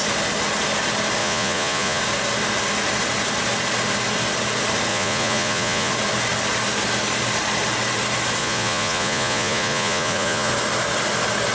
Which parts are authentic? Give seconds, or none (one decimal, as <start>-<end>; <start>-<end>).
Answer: 0.0-1.2; 2.0-4.9; 5.9-8.4; 10.5-11.5